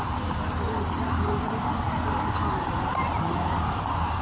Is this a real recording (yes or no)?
yes